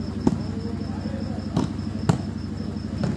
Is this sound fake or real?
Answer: real